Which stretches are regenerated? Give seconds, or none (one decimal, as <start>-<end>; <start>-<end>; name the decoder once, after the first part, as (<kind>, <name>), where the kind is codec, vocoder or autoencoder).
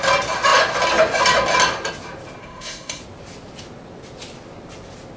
2.4-3.0 (codec, SNAC)